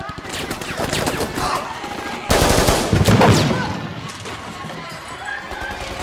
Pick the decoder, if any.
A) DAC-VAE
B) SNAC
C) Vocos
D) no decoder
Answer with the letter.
D